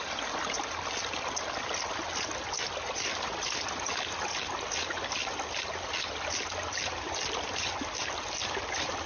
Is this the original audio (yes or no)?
yes